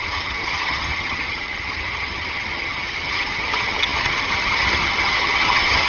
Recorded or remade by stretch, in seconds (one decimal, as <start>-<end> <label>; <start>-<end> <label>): 0.0-5.9 remade